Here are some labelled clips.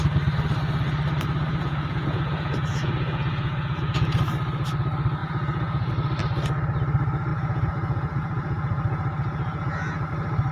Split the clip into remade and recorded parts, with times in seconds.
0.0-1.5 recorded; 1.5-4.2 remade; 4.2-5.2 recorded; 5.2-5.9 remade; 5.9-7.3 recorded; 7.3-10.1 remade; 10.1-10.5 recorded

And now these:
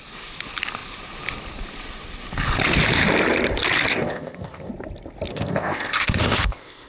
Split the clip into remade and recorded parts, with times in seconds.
0.0-3.9 recorded; 3.9-4.7 remade; 4.7-5.3 recorded; 5.3-6.9 remade

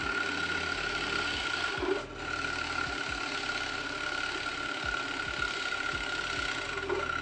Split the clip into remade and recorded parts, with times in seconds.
0.0-1.4 recorded; 1.4-1.9 remade; 1.9-7.2 recorded